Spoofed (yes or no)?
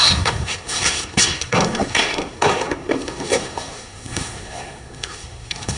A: yes